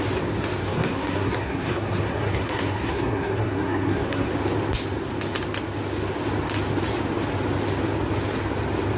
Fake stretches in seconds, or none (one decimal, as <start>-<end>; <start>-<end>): 0.6-4.3